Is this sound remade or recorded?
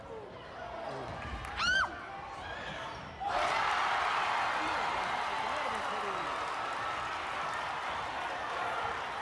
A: recorded